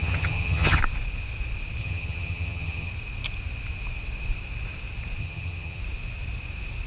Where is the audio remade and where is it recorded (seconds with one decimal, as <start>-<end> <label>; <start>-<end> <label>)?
0.0-0.8 remade; 0.8-1.8 recorded; 1.8-2.9 remade; 2.9-5.2 recorded; 5.2-5.8 remade; 5.8-6.9 recorded